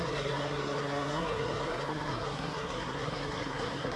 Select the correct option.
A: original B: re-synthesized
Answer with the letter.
B